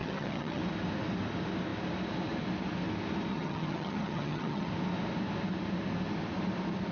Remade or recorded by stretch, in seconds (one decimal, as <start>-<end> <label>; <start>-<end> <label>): 0.0-0.6 remade; 0.6-3.3 recorded; 3.3-4.7 remade; 4.7-6.9 recorded